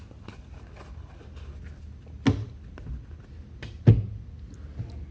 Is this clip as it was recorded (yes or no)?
yes